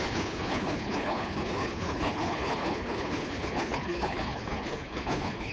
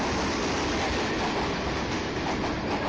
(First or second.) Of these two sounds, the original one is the second